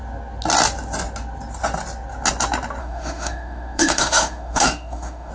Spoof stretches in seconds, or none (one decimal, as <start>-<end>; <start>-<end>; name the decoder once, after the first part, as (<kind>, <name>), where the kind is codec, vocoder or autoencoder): 2.8-5.3 (autoencoder, DAC-VAE)

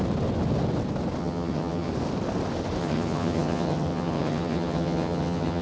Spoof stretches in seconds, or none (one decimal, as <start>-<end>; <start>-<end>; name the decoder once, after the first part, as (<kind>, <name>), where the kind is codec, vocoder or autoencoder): 1.2-1.9 (vocoder, HiFi-GAN); 2.8-5.6

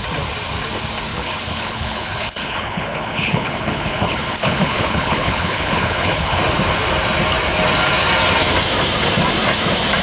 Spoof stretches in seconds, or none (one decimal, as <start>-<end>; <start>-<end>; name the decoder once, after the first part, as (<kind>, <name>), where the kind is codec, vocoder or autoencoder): 1.1-6.4 (codec, HILCodec)

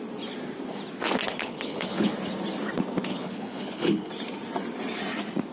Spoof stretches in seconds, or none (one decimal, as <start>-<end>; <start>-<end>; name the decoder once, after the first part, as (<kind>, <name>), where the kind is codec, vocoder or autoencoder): 1.4-2.1 (codec, HILCodec); 3.1-4.1

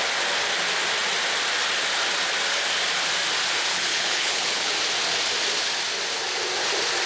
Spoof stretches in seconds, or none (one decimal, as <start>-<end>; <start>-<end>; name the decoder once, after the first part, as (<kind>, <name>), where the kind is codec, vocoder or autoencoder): 3.7-4.7 (codec, HILCodec)

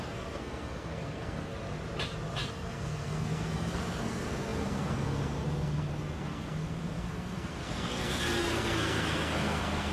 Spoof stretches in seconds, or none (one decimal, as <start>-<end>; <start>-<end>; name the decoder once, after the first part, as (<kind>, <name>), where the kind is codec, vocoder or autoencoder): 0.0-1.5 (codec, SNAC); 2.5-9.9

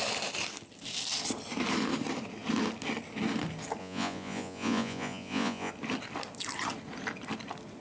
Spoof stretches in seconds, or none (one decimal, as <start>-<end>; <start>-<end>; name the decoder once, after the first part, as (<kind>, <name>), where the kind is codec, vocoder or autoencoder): 3.8-5.7 (vocoder, Vocos)